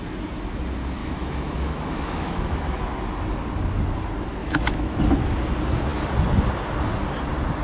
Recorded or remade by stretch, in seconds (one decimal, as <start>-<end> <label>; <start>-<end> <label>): 0.0-1.0 recorded; 1.0-2.8 remade; 2.8-4.4 recorded; 4.4-5.0 remade; 5.0-7.6 recorded